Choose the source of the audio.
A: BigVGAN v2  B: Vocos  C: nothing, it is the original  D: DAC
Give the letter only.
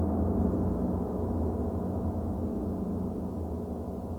C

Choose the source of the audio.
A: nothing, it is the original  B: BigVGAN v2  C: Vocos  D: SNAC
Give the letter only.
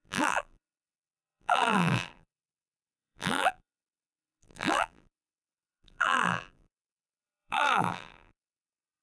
B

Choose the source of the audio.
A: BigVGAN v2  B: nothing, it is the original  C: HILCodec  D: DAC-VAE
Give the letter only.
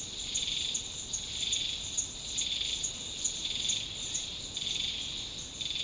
B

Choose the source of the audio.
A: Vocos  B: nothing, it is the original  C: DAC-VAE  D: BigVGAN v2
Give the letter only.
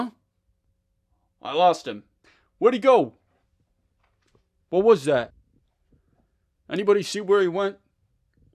B